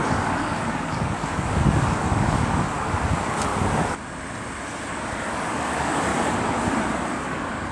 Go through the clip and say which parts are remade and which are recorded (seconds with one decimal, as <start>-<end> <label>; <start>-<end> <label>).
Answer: 0.0-3.5 remade; 3.5-4.9 recorded; 4.9-6.1 remade; 6.1-7.1 recorded; 7.1-7.7 remade